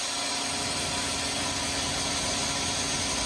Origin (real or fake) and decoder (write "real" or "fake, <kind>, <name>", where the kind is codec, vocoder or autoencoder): real